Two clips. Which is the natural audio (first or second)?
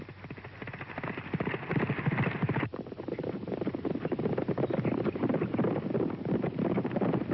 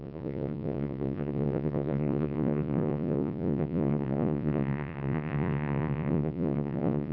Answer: first